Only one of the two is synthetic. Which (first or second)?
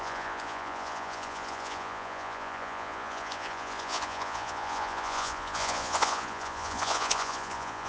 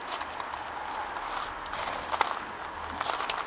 first